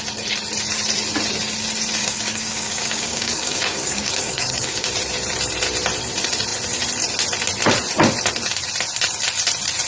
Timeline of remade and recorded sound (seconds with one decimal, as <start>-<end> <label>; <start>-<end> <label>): 0.0-2.0 recorded; 2.0-4.9 remade; 4.9-9.9 recorded